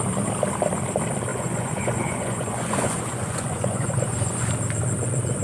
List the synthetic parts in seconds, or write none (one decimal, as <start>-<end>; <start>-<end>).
1.3-4.5